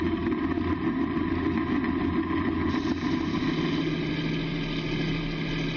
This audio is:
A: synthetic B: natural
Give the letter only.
B